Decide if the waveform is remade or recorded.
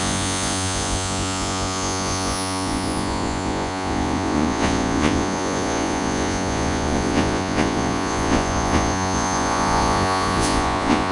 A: remade